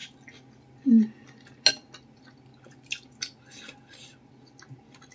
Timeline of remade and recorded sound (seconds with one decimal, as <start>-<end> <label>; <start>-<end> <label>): 0.0-5.1 recorded